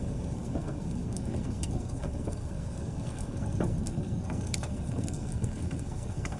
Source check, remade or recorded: remade